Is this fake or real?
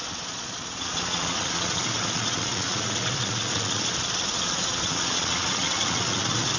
fake